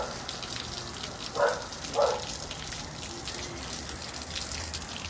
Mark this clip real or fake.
real